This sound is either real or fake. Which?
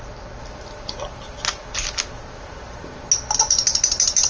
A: real